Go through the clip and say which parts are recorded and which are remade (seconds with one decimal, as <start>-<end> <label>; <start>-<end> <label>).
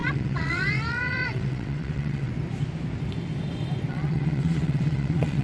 0.0-2.3 remade; 2.3-3.9 recorded; 3.9-5.4 remade